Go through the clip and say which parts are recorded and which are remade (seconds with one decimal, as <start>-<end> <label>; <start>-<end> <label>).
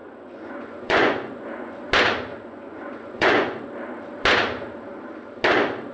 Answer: 0.0-1.9 remade; 1.9-2.3 recorded; 2.3-3.7 remade; 3.7-5.9 recorded